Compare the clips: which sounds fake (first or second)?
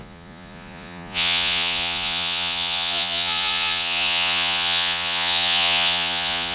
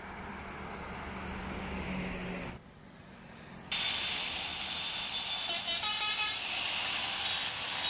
first